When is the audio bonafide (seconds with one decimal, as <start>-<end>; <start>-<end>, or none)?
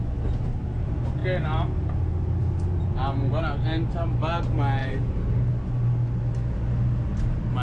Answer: 0.0-4.8; 5.5-7.6